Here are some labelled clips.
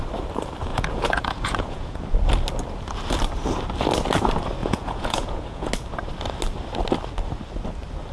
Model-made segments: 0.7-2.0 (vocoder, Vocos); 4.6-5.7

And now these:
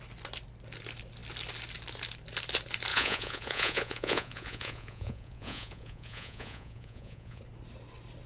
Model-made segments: 2.9-7.4 (vocoder, Vocos)

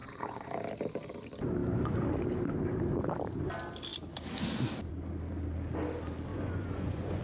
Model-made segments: 0.0-0.5 (vocoder, Vocos); 6.3-7.2

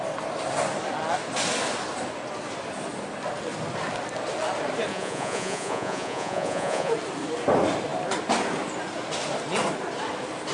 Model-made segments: 4.9-6.9 (vocoder, Vocos)

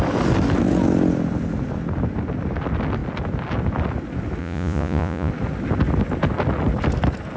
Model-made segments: 4.4-5.3 (vocoder, Vocos)

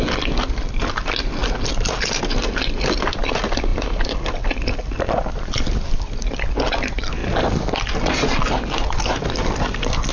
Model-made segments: none

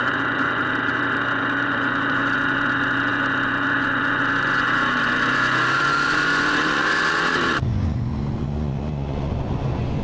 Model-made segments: 0.0-10.0 (vocoder, Vocos)

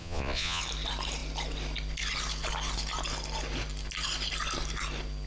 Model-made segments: 0.0-0.6 (vocoder, Vocos)